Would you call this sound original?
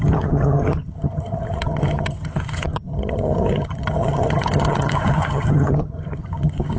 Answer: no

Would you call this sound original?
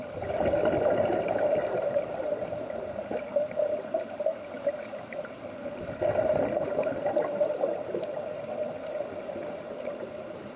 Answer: yes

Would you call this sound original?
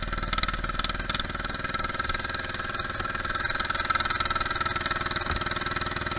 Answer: yes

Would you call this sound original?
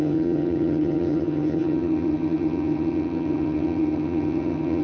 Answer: no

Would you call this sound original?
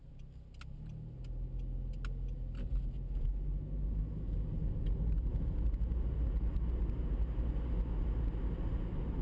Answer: yes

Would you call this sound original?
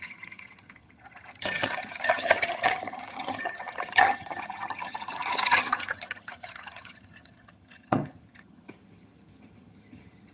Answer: no